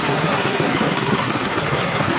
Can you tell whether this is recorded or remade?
remade